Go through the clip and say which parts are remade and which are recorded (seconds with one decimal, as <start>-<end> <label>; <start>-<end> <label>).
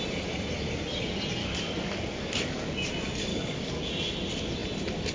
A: 0.0-1.4 recorded; 1.4-2.9 remade; 2.9-3.3 recorded; 3.3-3.8 remade; 3.8-5.1 recorded